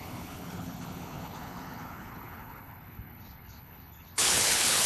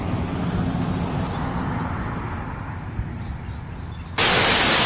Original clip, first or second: second